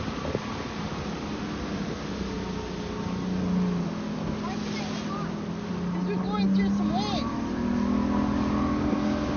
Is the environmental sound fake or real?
real